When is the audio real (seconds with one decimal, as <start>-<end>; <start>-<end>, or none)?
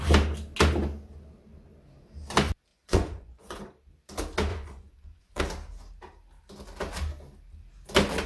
0.0-2.7; 3.6-4.5; 5.4-8.3